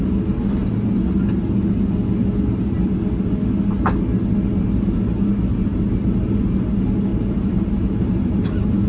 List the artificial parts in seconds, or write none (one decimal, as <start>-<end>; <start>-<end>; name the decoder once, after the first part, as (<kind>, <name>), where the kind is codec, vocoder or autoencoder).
5.7-6.2 (vocoder, BigVGAN v2); 7.1-8.9